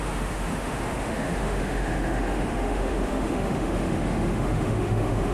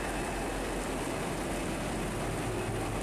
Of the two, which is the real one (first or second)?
second